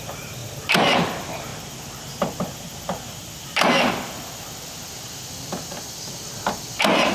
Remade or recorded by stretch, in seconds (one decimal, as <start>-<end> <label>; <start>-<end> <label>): 0.0-7.1 recorded

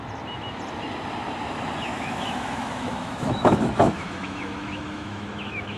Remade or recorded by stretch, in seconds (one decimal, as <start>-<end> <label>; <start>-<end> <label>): 0.0-1.9 recorded; 1.9-5.8 remade

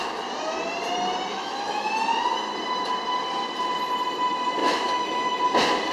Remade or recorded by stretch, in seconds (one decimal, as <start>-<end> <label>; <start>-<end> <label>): 0.0-1.3 recorded; 1.3-1.9 remade; 1.9-4.6 recorded; 4.6-5.4 remade; 5.4-5.9 recorded